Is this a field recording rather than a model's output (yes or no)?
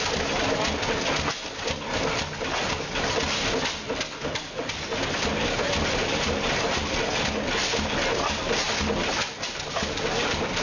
yes